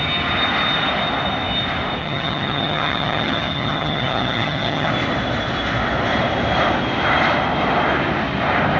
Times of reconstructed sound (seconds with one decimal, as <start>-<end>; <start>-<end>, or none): 2.0-4.9